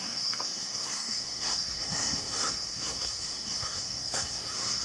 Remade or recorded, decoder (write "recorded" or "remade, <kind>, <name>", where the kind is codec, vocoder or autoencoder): remade, codec, SNAC